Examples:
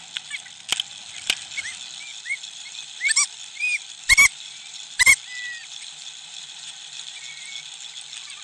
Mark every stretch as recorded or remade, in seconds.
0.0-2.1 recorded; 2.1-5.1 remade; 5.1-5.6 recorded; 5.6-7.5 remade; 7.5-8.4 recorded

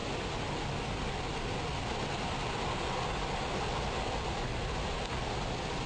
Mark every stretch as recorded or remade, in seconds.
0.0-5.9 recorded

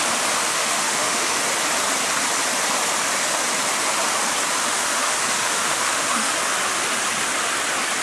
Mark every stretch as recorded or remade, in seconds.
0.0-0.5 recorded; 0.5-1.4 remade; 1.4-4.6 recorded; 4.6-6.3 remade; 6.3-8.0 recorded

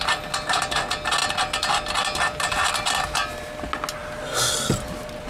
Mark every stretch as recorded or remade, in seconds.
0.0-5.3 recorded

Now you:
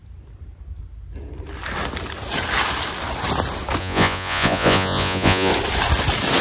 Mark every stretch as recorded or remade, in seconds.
0.0-3.8 recorded; 3.8-5.5 remade; 5.5-6.4 recorded